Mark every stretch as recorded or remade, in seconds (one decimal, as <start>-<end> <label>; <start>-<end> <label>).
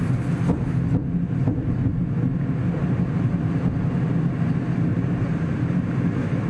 0.0-2.8 recorded; 2.8-3.5 remade; 3.5-4.9 recorded; 4.9-5.8 remade; 5.8-6.5 recorded